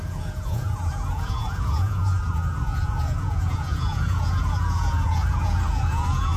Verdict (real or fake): fake